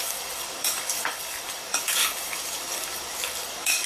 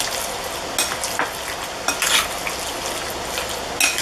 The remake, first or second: first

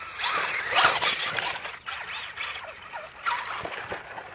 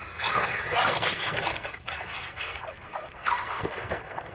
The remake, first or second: second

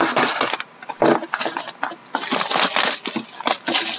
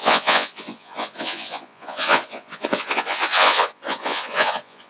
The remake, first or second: second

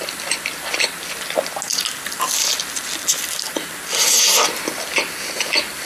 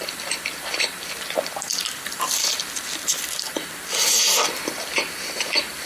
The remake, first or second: second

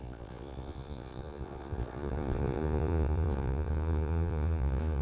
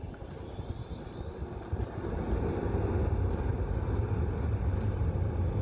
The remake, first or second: first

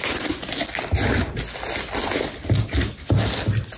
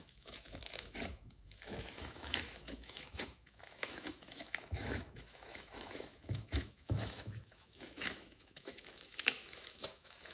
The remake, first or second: second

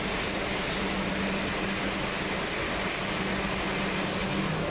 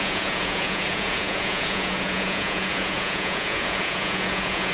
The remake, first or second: second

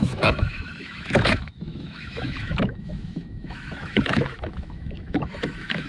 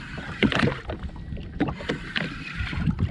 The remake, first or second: first